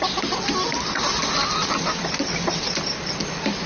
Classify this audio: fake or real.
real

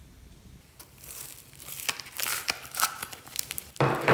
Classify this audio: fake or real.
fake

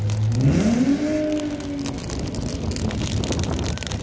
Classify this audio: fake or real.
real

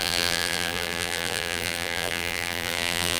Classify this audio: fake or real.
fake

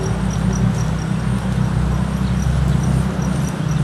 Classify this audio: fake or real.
real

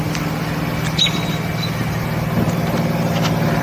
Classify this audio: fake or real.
real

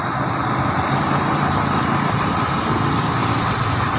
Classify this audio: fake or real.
real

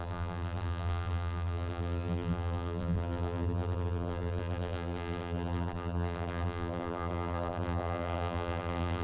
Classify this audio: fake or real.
fake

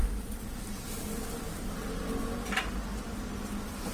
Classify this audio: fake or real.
real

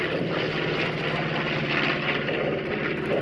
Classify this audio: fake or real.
real